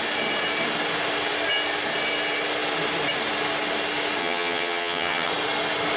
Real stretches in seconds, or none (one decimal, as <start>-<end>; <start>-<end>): 0.0-4.2; 5.3-6.0